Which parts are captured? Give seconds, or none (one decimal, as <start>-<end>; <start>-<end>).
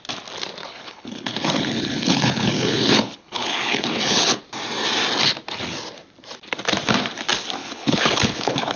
0.0-0.6; 4.4-7.6